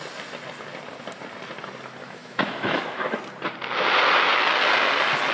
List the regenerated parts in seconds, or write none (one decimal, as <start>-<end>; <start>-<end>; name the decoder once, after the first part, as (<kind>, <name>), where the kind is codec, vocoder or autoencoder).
2.0-3.2 (autoencoder, DAC-VAE)